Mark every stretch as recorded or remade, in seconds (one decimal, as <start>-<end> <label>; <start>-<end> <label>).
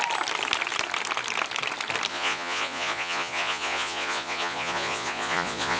0.0-2.1 recorded; 2.1-5.8 remade